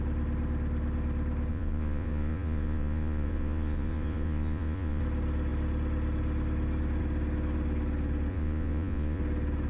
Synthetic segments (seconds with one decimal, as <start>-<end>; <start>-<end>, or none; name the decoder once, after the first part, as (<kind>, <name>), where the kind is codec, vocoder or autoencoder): 1.5-5.0 (vocoder, Vocos); 8.3-9.2